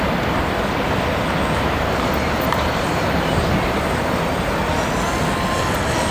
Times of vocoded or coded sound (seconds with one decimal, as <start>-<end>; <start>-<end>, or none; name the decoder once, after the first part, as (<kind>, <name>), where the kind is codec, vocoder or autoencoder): 1.8-4.6 (vocoder, BigVGAN v2)